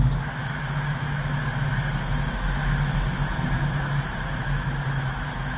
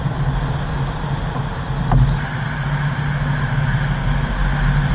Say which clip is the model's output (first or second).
first